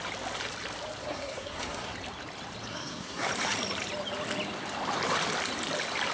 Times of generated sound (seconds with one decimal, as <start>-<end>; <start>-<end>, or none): 1.0-1.9; 2.7-3.3